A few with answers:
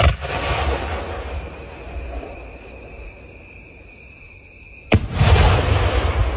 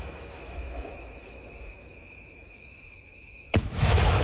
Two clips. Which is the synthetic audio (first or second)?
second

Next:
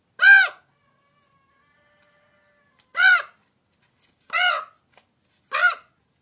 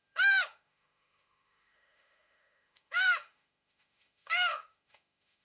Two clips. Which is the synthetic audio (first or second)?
second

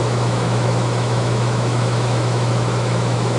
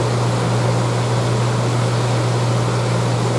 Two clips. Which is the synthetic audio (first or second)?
first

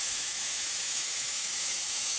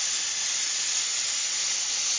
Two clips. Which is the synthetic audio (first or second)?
first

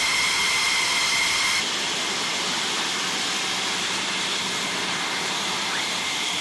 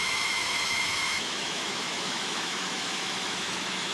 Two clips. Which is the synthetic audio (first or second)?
second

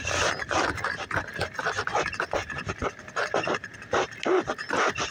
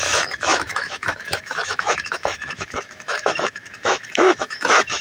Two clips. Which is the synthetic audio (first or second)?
second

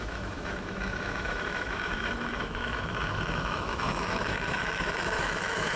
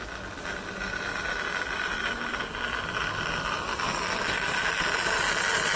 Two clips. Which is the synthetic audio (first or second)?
first